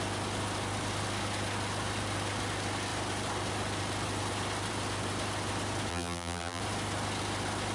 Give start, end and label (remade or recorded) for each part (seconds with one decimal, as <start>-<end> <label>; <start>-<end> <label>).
0.0-5.9 recorded; 5.9-6.6 remade; 6.6-7.7 recorded